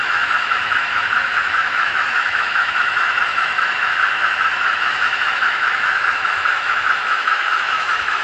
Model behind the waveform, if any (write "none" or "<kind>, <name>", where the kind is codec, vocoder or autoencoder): autoencoder, DAC-VAE